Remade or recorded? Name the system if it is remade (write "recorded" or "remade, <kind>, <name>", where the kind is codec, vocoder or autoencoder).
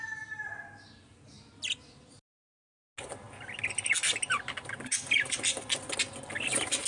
recorded